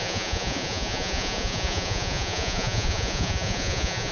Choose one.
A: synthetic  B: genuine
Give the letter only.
A